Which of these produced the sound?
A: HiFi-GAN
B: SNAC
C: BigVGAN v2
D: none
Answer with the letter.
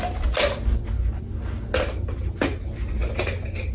D